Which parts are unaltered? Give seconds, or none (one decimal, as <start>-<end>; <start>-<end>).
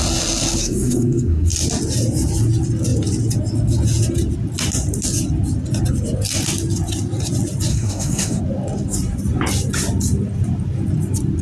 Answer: 0.0-0.6; 1.5-7.7; 8.4-11.4